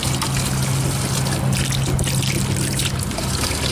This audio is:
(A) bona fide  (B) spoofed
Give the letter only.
A